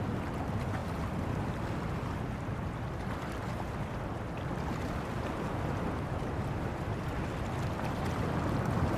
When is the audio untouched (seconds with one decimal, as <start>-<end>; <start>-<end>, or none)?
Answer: 0.0-9.0